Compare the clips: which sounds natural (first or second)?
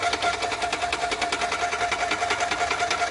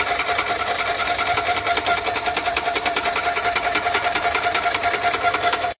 first